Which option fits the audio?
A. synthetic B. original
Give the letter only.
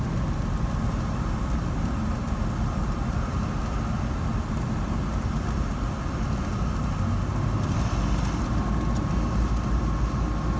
B